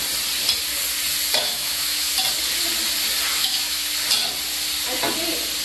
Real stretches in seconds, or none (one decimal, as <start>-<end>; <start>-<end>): 0.0-1.4; 2.1-3.3; 3.9-5.6